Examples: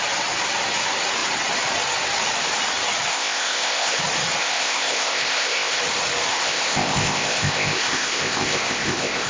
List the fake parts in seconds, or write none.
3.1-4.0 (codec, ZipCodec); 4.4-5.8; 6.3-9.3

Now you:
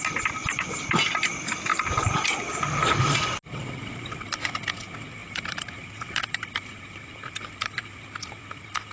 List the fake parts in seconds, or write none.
0.4-0.9 (vocoder, BigVGAN v2); 1.7-2.5; 3.8-4.3; 5.2-8.2

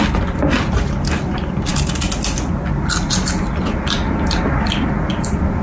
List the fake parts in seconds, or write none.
none

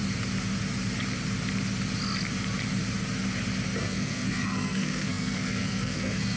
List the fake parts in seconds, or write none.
3.8-6.4 (codec, SNAC)

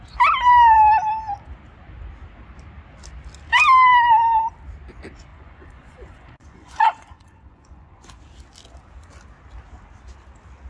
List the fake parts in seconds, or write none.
5.3-8.2 (vocoder, Vocos)

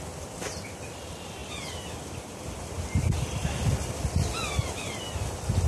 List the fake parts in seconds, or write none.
none

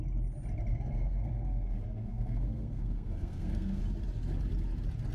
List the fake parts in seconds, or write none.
0.7-3.8 (codec, SNAC)